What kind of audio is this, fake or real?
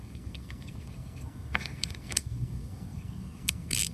fake